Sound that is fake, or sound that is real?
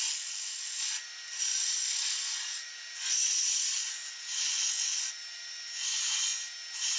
real